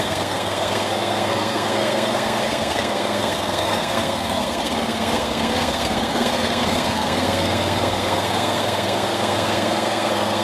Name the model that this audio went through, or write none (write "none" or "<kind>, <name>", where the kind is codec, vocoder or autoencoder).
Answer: codec, SNAC